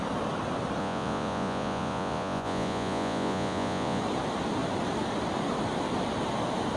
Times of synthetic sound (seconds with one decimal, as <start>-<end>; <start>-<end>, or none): 0.8-4.0